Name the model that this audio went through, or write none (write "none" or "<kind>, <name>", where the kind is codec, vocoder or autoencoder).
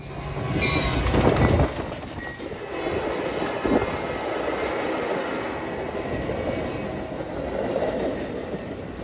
none